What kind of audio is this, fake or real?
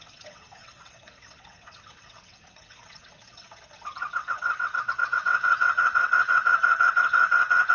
fake